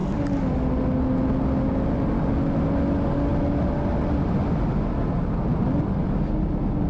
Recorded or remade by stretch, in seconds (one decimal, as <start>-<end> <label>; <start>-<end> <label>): 0.0-6.9 recorded